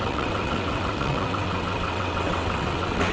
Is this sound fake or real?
fake